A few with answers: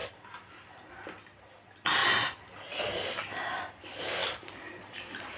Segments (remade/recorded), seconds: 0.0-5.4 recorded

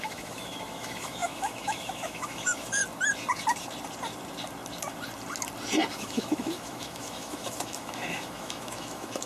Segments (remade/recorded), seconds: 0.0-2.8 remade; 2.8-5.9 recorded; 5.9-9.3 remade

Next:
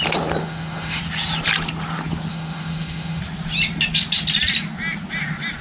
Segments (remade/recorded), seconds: 0.0-0.4 recorded; 0.4-1.0 remade; 1.0-2.3 recorded; 2.3-3.2 remade; 3.2-5.6 recorded

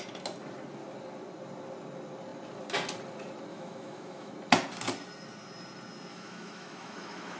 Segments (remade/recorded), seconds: 0.0-3.5 recorded; 3.5-4.3 remade; 4.3-6.1 recorded; 6.1-7.4 remade

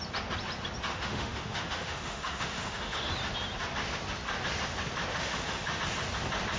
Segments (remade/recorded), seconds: 0.0-0.9 recorded; 0.9-3.1 remade; 3.1-5.1 recorded; 5.1-5.8 remade; 5.8-6.6 recorded

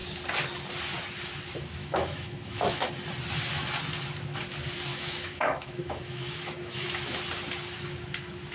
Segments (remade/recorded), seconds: 0.0-1.8 recorded; 1.8-2.9 remade; 2.9-4.9 recorded; 4.9-7.2 remade; 7.2-8.5 recorded

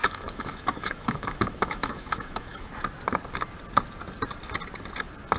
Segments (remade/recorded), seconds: 0.0-2.7 remade; 2.7-5.4 recorded

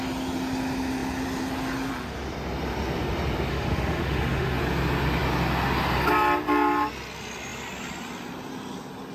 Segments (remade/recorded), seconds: 0.0-3.5 recorded; 3.5-4.6 remade; 4.6-9.1 recorded